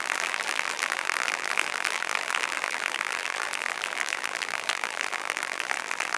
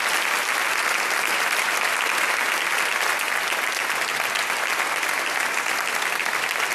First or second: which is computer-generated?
first